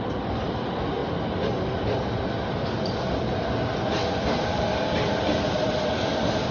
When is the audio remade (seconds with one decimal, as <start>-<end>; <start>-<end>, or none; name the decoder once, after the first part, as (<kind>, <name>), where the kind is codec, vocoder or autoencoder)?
none